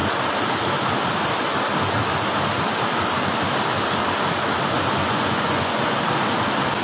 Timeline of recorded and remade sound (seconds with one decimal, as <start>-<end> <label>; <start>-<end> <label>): 0.0-5.0 recorded; 5.0-6.0 remade; 6.0-6.8 recorded